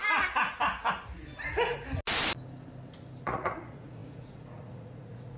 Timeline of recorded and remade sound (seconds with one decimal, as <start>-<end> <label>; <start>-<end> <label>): 0.0-3.2 recorded; 3.2-5.4 remade